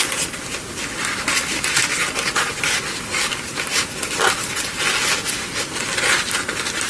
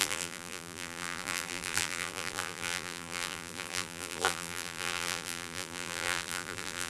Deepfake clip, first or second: second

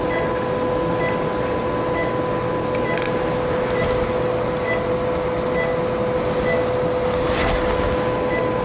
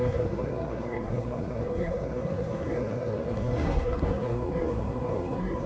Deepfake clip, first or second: second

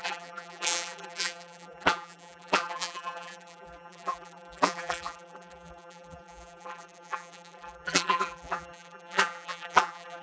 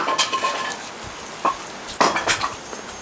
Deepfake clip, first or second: first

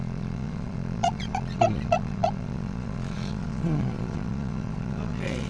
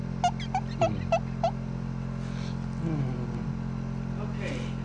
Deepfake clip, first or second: first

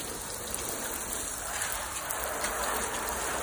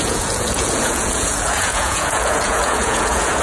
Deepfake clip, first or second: second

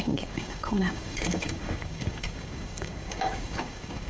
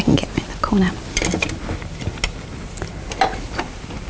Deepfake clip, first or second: first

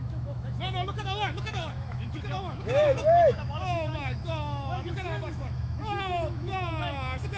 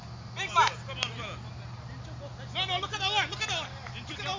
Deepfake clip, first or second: first